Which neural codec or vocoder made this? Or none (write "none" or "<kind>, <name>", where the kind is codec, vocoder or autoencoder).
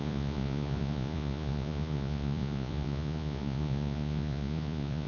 vocoder, Vocos